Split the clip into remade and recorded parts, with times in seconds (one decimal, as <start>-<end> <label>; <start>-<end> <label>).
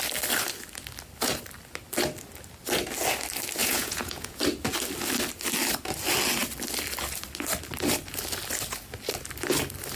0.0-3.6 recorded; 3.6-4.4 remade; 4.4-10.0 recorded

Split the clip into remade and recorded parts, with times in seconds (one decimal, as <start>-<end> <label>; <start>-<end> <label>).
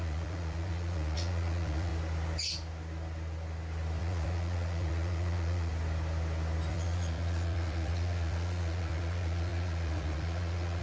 0.0-1.9 remade; 1.9-4.0 recorded; 4.0-5.7 remade; 5.7-6.7 recorded; 6.7-10.8 remade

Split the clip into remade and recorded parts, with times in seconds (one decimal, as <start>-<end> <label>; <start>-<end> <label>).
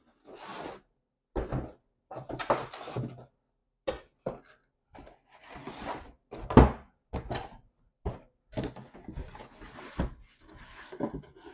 0.0-11.5 recorded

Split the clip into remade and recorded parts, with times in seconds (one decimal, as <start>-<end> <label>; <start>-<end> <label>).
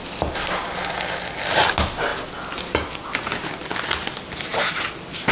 0.0-5.3 recorded